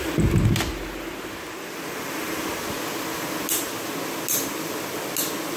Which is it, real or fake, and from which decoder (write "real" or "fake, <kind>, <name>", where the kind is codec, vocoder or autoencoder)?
real